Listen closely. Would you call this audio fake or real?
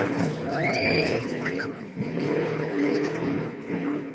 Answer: fake